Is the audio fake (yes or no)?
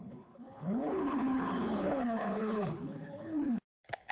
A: yes